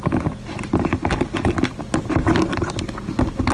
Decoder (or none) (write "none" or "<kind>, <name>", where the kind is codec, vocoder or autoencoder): none